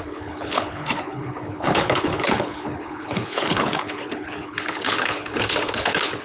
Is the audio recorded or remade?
remade